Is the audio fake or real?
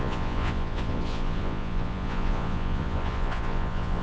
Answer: fake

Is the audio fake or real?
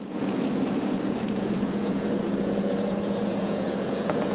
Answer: fake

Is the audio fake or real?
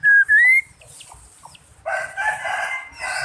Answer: real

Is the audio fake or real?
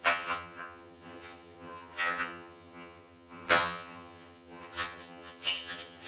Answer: fake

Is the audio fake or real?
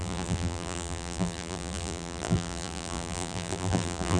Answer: fake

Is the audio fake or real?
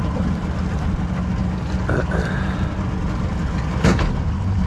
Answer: real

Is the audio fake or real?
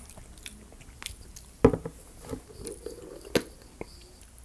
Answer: real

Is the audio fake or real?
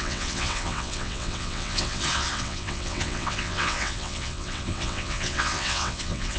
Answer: fake